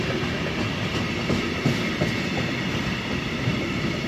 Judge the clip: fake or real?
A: fake